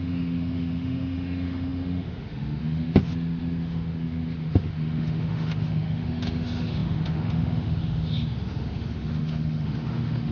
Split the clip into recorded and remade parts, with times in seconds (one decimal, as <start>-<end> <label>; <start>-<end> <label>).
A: 0.0-10.3 remade